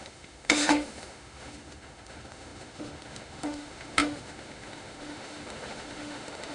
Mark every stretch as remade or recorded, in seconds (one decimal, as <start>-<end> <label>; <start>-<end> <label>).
0.0-6.5 remade